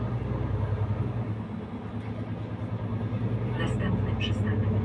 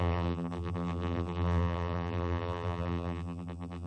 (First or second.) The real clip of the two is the first